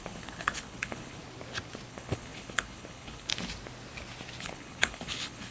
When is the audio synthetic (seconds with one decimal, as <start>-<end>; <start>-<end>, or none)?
0.0-1.2; 1.9-3.3; 4.4-5.5

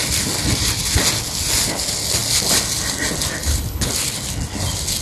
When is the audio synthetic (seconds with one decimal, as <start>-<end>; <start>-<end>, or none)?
3.4-3.9

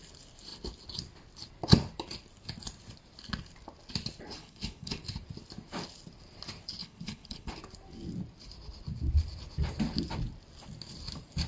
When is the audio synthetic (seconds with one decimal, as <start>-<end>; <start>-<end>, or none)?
4.4-5.0; 6.8-7.5